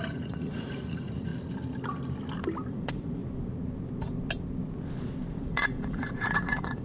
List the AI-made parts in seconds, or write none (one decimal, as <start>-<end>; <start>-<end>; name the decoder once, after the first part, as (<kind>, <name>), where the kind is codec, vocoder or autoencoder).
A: 0.0-1.3 (vocoder, Vocos); 2.7-3.2; 5.4-6.8